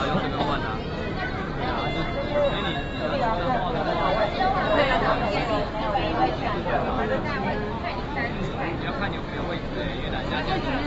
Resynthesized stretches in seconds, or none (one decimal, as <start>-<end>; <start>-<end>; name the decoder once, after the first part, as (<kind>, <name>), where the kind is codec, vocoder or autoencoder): 3.9-4.9 (vocoder, BigVGAN v2)